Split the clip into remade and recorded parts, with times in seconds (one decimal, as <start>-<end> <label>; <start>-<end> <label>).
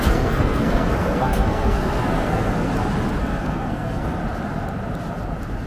0.0-2.7 remade; 2.7-3.2 recorded; 3.2-4.2 remade; 4.2-5.7 recorded